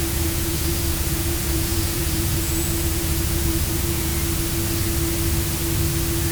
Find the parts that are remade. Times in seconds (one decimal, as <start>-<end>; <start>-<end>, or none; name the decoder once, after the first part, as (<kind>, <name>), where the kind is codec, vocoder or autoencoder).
0.0-4.1 (vocoder, Vocos)